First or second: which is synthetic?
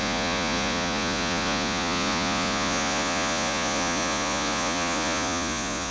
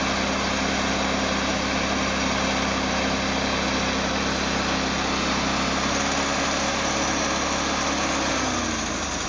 first